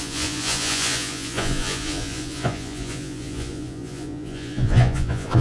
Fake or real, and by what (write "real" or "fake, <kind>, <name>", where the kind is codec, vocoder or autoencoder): fake, vocoder, Vocos